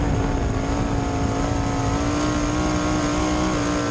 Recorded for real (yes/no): yes